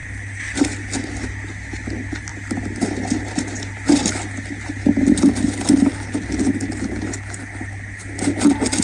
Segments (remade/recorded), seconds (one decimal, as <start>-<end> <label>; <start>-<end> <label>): 0.0-8.8 recorded